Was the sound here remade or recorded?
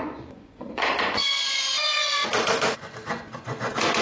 remade